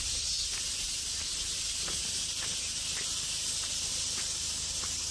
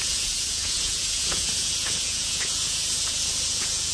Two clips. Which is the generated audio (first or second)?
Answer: second